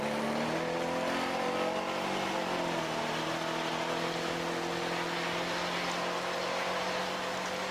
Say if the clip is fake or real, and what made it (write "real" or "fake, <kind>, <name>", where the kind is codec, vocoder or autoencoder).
real